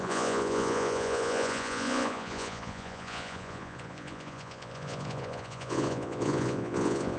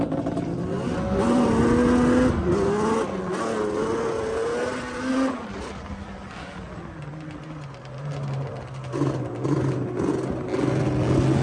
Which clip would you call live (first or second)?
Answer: second